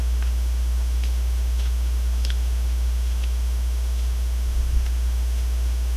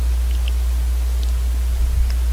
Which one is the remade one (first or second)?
first